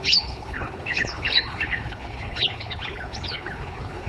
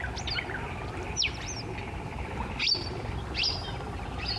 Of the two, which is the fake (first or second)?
first